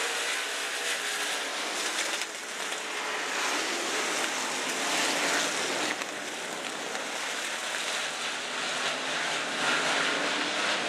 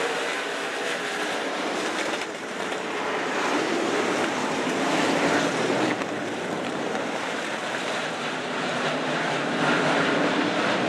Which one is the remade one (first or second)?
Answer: second